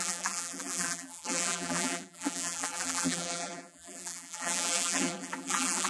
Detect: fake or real fake